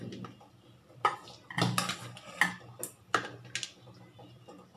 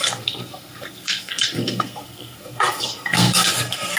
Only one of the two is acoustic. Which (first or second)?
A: first